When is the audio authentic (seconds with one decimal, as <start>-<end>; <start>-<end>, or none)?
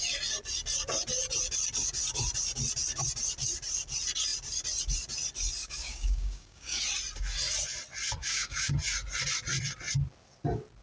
0.0-5.6; 6.8-8.2; 8.7-10.8